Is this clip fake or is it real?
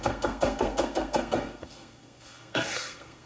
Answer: fake